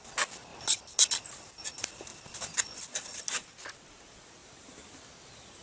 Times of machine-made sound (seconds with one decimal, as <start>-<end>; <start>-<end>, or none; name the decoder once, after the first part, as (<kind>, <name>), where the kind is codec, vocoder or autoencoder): 4.4-5.0 (vocoder, BigVGAN v2)